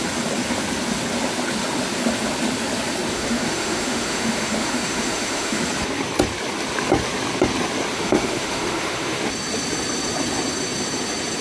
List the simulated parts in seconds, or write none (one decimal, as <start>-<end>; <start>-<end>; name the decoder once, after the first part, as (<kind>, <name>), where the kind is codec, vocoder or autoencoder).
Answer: 3.1-5.6 (autoencoder, DAC-VAE); 7.9-9.2